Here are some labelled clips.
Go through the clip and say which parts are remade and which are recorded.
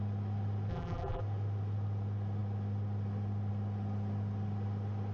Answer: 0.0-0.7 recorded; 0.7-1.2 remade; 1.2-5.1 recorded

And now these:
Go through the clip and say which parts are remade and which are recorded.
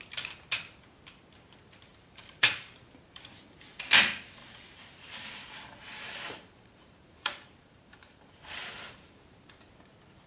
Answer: 0.0-1.9 recorded; 1.9-3.2 remade; 3.2-4.4 recorded; 4.4-8.7 remade; 8.7-10.3 recorded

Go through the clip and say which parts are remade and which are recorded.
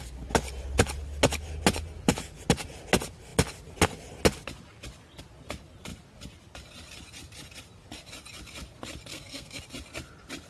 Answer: 0.0-9.1 recorded; 9.1-9.6 remade; 9.6-10.5 recorded